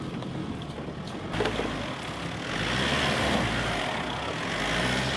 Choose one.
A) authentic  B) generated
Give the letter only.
A